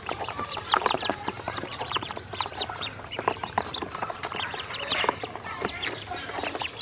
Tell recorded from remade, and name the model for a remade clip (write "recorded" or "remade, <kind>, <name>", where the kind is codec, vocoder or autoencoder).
remade, vocoder, BigVGAN v2